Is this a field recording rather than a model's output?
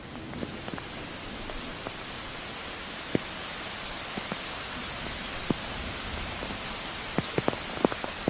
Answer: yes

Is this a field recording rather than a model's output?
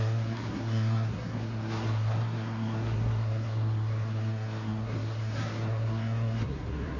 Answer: no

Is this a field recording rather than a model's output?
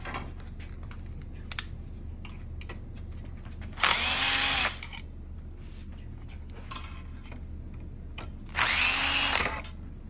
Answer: yes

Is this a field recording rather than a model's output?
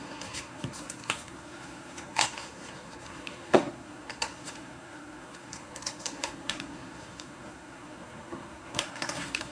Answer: no